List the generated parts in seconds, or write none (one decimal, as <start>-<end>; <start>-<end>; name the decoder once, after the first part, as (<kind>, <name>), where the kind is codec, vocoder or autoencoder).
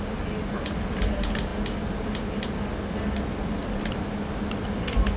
none